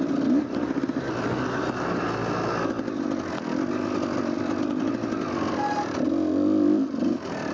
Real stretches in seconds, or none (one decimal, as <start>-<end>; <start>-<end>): 0.0-7.5